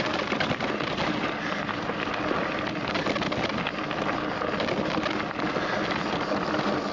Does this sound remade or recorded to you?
recorded